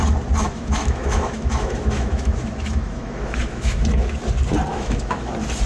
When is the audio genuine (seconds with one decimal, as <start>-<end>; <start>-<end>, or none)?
0.0-0.4; 3.8-4.7; 5.3-5.7